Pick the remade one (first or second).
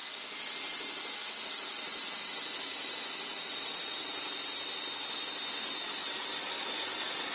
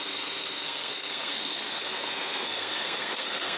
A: second